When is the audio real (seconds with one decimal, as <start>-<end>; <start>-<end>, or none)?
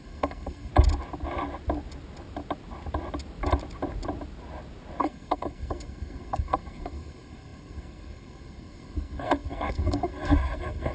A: 0.7-5.0